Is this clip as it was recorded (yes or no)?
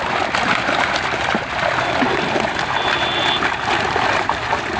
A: yes